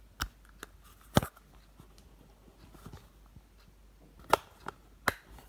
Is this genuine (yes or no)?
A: yes